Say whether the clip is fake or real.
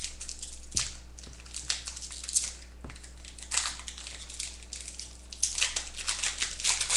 real